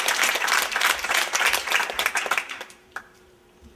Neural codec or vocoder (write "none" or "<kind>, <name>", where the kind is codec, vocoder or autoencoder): vocoder, BigVGAN v2